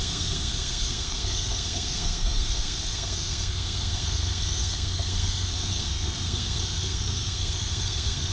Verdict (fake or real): fake